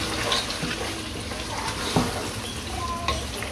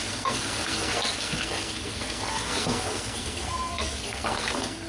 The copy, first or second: second